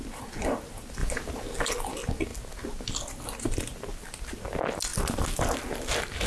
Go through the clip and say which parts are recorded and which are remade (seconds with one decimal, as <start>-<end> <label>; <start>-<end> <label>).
0.0-6.3 recorded